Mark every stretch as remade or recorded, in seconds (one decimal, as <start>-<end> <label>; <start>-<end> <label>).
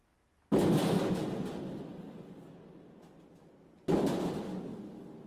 0.0-5.3 recorded